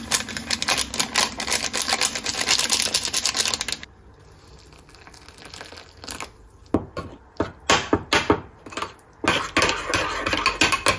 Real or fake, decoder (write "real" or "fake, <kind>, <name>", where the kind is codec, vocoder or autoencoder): real